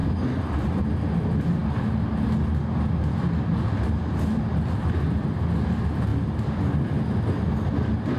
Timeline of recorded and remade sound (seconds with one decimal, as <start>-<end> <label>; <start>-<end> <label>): 0.0-0.8 remade; 0.8-8.2 recorded